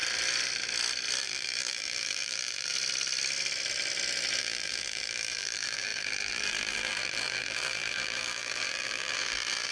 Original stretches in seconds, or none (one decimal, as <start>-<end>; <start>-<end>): 0.0-1.2; 2.7-4.4